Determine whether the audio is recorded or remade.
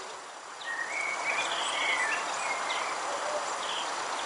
recorded